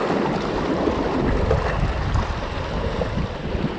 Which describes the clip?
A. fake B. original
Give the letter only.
B